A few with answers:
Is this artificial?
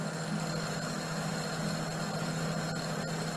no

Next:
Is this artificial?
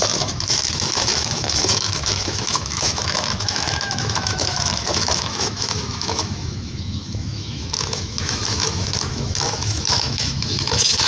yes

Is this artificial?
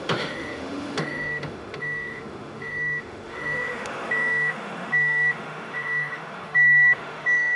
yes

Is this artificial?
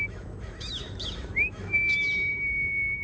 yes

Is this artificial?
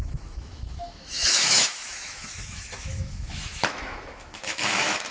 yes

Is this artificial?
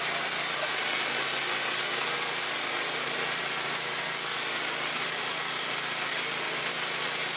no